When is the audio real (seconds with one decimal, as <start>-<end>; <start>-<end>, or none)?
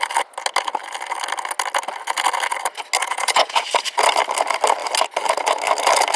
0.0-3.0; 3.7-6.2